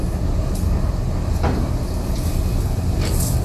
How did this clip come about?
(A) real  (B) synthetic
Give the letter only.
A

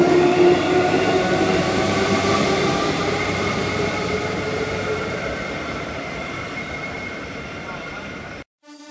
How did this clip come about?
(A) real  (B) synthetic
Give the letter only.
B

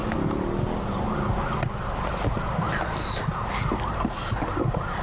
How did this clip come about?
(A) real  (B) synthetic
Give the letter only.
A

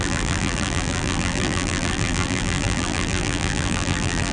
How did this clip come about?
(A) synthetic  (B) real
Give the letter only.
A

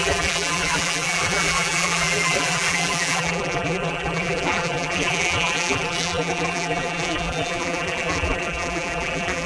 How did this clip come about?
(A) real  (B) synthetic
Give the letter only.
B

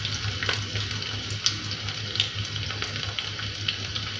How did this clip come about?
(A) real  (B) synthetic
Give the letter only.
A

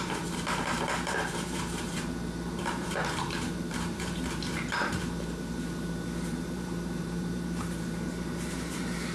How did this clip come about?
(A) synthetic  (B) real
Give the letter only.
A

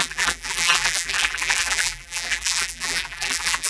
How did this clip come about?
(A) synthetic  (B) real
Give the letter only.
A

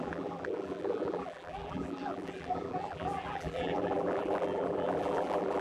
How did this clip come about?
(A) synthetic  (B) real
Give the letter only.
A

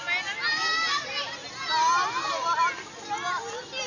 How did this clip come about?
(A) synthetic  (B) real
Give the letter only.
B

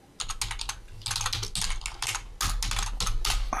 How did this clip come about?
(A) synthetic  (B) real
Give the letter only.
B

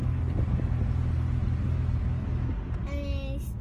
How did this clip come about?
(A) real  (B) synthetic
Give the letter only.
A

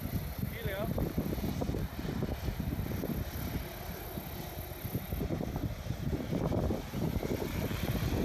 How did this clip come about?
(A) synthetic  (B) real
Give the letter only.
B